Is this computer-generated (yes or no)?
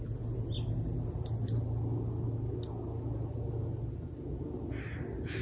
no